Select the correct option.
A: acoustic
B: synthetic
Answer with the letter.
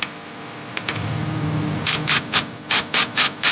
A